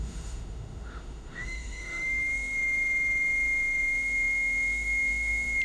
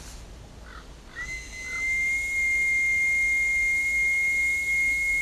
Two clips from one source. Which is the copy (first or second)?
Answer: first